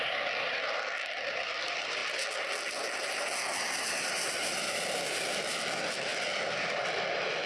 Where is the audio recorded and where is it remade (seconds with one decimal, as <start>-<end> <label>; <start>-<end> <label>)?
0.0-2.0 recorded; 2.0-2.7 remade; 2.7-3.5 recorded; 3.5-5.6 remade; 5.6-6.1 recorded; 6.1-7.5 remade